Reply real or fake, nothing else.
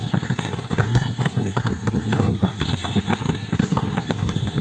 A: fake